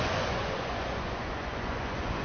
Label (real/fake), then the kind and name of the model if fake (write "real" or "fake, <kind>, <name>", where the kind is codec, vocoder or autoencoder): fake, vocoder, Vocos